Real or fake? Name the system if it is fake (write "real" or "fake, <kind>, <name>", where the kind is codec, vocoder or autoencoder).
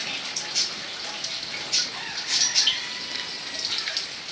real